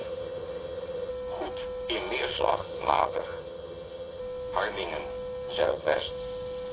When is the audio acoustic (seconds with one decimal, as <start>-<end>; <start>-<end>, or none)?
1.1-2.3; 4.2-5.6; 6.1-6.7